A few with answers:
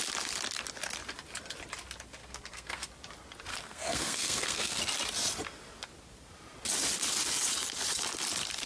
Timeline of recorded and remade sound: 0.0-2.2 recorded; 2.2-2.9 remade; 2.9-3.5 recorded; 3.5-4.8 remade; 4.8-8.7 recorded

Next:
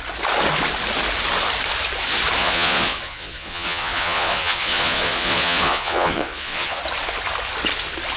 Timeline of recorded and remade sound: 0.0-2.4 recorded; 2.4-6.8 remade; 6.8-8.2 recorded

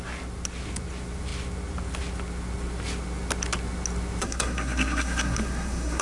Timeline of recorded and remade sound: 0.0-4.2 recorded; 4.2-6.0 remade

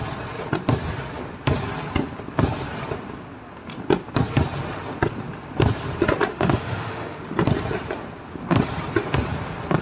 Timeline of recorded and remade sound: 0.0-6.3 recorded; 6.3-7.2 remade; 7.2-9.8 recorded